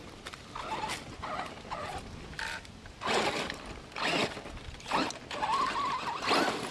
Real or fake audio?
real